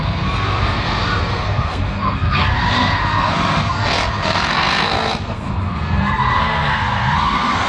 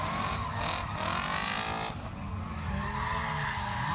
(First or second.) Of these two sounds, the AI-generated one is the first